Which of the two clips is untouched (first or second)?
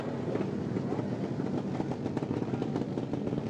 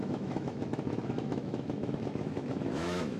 first